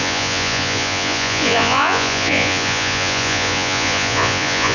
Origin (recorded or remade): remade